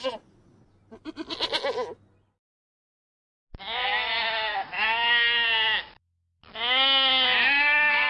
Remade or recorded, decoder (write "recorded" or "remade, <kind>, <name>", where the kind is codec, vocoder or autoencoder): recorded